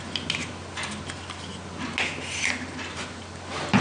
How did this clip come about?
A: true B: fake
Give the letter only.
A